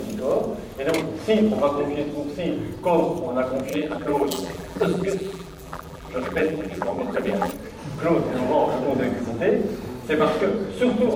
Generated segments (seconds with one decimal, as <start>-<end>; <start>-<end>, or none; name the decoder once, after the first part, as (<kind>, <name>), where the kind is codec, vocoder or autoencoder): 3.7-7.5 (vocoder, BigVGAN v2)